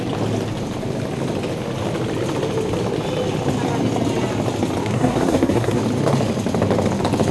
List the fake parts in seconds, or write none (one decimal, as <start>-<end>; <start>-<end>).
4.8-5.8